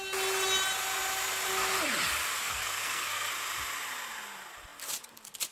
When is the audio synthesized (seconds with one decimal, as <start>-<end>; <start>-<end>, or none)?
2.4-3.3